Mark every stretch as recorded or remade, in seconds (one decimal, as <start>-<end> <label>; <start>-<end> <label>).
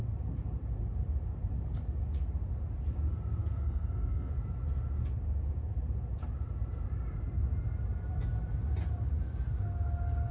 0.0-3.4 recorded; 3.4-4.3 remade; 4.3-10.3 recorded